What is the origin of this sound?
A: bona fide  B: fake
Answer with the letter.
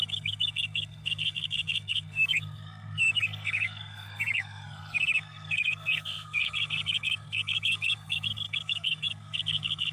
B